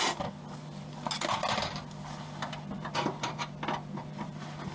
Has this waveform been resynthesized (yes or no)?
no